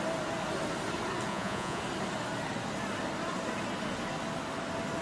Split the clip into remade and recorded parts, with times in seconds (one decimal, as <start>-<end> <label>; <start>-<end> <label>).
0.0-1.3 recorded; 1.3-1.8 remade; 1.8-5.0 recorded